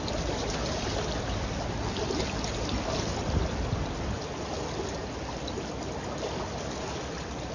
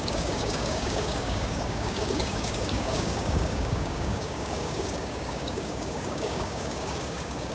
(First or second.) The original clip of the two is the first